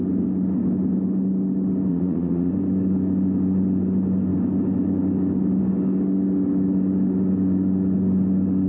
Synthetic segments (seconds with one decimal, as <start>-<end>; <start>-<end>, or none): 1.9-2.5